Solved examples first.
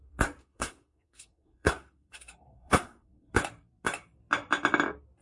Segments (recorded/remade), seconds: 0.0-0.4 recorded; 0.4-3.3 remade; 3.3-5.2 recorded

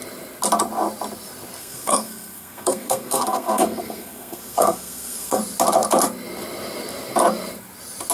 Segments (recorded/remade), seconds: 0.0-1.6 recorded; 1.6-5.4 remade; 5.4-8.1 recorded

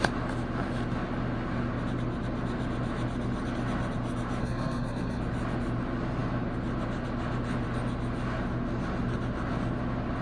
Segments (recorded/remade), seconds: 0.0-4.4 recorded; 4.4-5.2 remade; 5.2-10.2 recorded

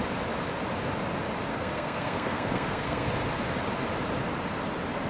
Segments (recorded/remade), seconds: 0.0-1.5 recorded; 1.5-3.1 remade; 3.1-5.1 recorded